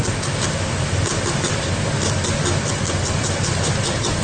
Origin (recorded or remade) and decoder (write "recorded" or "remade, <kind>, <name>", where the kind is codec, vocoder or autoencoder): recorded